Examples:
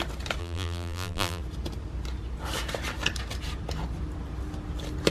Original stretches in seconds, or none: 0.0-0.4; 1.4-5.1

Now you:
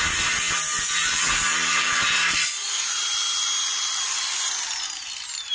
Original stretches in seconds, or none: 3.1-5.0

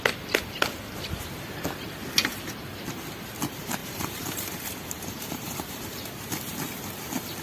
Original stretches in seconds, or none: 0.0-3.8; 6.1-7.4

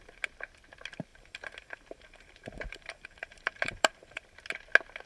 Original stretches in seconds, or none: 0.0-1.1; 4.2-5.1

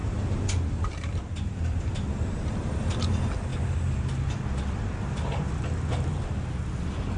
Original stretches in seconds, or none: 3.0-7.2

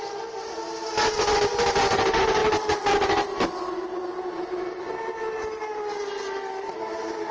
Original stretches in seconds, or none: 0.0-7.3

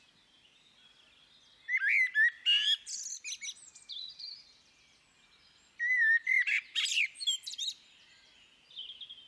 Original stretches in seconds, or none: 0.0-6.9; 7.7-9.3

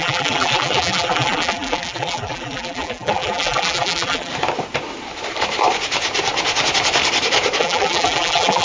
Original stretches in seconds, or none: 4.3-7.6